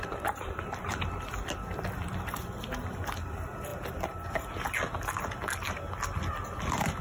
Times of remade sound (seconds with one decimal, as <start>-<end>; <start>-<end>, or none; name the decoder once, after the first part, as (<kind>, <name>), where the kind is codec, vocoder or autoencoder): 0.0-3.7 (vocoder, BigVGAN v2); 6.5-7.0